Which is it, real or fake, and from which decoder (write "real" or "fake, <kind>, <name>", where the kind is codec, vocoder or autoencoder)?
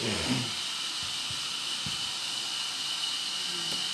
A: real